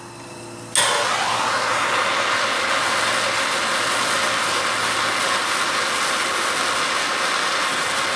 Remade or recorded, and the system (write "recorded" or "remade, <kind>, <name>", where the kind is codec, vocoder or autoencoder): recorded